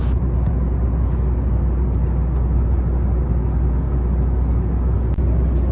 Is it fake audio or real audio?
real